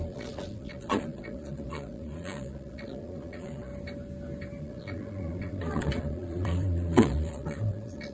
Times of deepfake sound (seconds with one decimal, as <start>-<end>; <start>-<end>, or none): 0.0-3.7; 4.6-8.1